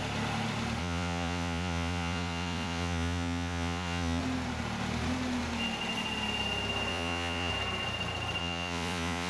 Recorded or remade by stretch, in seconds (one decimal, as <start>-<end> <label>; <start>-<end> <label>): 0.0-0.8 recorded; 0.8-4.2 remade; 4.2-6.9 recorded; 6.9-7.5 remade; 7.5-8.4 recorded; 8.4-9.3 remade